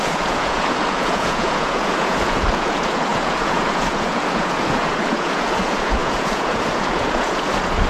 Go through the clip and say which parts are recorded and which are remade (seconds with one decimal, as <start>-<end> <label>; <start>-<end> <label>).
0.0-7.9 remade